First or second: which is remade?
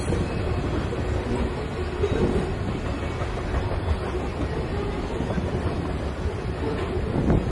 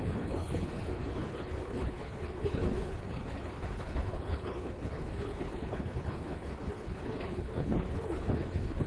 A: second